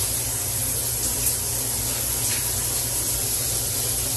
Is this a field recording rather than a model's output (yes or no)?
yes